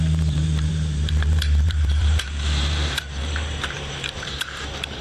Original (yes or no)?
no